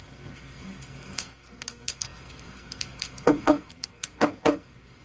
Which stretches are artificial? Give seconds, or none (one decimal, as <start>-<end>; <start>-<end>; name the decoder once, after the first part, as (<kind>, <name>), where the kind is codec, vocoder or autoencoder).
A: 0.0-5.0 (codec, SNAC)